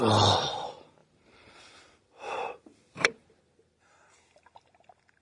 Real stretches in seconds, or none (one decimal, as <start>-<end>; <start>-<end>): 0.0-1.0; 3.4-5.2